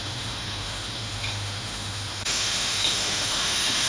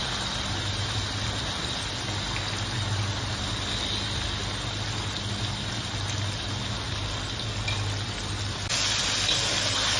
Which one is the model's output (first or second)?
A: first